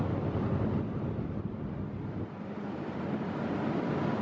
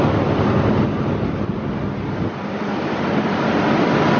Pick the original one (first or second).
second